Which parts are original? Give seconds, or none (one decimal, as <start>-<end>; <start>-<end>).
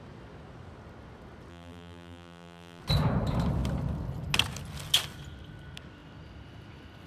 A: 0.0-1.5; 2.8-7.1